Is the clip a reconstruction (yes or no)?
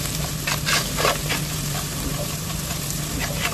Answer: yes